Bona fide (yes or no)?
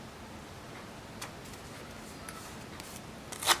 yes